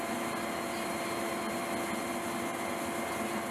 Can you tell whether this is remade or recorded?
recorded